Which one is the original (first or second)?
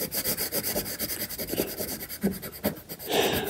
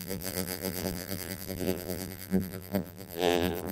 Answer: first